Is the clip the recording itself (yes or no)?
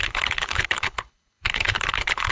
no